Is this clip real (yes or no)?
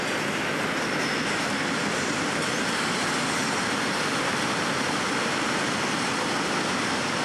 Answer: yes